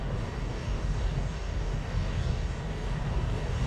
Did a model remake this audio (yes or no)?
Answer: yes